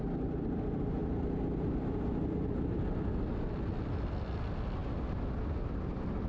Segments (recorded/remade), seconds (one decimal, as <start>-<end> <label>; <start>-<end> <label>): 0.0-6.3 recorded